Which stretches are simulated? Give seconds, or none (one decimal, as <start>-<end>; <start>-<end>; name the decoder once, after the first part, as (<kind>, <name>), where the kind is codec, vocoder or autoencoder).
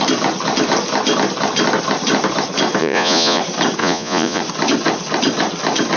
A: 2.8-3.4 (vocoder, Vocos); 3.8-4.4